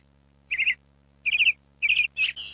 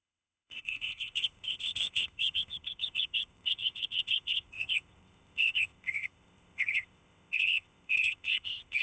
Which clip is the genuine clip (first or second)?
first